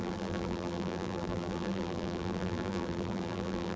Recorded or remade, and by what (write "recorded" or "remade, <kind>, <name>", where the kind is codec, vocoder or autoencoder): remade, vocoder, BigVGAN v2